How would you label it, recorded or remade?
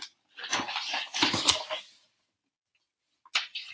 recorded